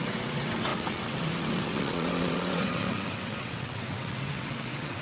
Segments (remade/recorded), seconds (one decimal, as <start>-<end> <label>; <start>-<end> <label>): 0.0-5.0 remade